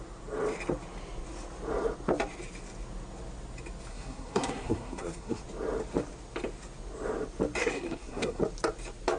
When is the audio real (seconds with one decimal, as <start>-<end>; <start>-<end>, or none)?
0.0-3.9; 5.4-7.6; 8.4-9.2